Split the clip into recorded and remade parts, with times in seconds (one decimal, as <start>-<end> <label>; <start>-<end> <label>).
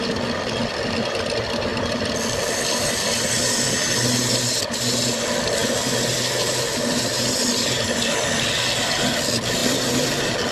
0.0-1.7 recorded; 1.7-2.4 remade; 2.4-10.5 recorded